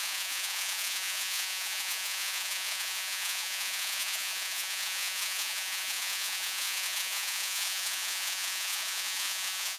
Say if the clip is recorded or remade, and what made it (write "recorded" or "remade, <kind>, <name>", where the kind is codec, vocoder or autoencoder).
remade, vocoder, Vocos